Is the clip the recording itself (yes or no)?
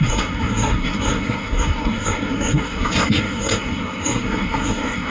no